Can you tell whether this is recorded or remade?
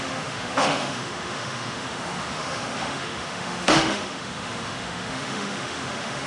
remade